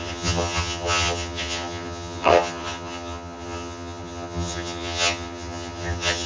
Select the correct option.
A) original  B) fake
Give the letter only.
B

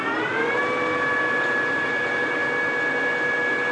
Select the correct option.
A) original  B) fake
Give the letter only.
A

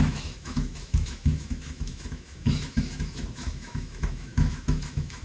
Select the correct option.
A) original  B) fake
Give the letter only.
B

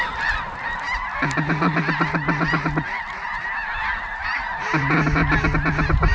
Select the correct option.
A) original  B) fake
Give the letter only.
A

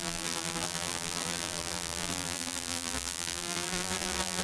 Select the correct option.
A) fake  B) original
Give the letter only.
A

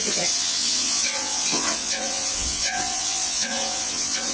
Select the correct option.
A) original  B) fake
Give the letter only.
B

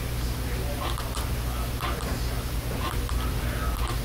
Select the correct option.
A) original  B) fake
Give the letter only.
A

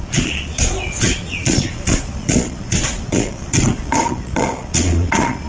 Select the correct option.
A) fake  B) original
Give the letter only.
A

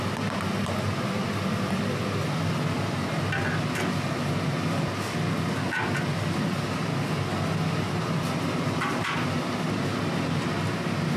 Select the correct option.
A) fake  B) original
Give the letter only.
B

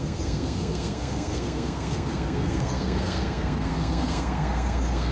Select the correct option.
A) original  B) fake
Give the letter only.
B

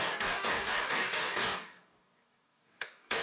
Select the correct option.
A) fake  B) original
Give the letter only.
A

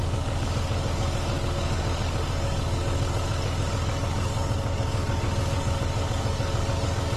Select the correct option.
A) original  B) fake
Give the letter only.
B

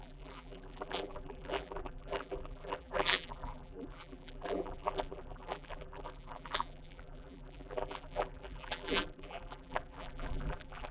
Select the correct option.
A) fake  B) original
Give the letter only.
A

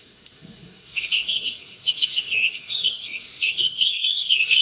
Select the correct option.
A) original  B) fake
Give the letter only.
B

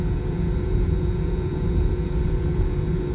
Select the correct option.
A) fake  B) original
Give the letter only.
A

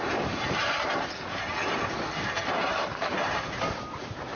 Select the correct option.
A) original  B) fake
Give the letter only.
B